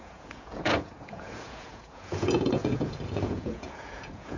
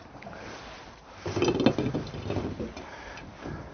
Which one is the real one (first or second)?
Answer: second